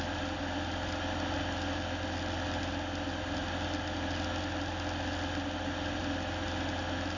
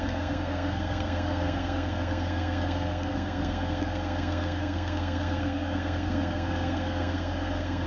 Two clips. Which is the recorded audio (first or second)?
first